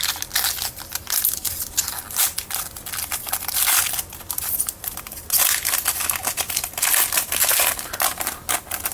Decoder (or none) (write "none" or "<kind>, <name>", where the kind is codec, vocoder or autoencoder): none